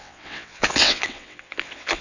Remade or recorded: remade